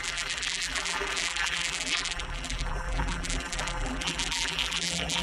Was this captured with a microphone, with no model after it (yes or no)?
no